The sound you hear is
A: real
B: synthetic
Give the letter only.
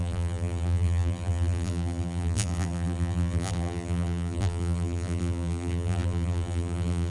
B